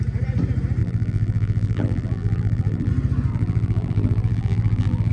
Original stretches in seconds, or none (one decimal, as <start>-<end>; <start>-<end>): 0.0-0.8; 2.9-3.3